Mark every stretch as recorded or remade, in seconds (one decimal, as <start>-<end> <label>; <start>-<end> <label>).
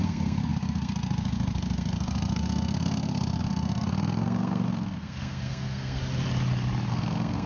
0.0-6.0 remade; 6.0-6.9 recorded; 6.9-7.5 remade